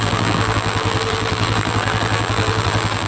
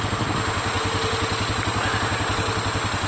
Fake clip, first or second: first